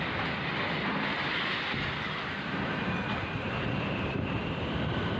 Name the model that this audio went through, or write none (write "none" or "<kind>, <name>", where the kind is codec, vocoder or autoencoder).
none